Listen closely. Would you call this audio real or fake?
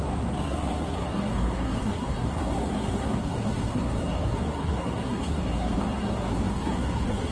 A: fake